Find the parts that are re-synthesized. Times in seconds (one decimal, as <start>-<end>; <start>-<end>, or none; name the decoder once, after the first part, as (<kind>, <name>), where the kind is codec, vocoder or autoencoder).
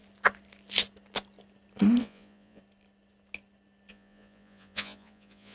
2.0-2.6 (vocoder, Vocos); 3.9-5.5